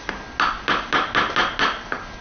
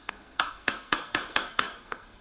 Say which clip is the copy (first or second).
second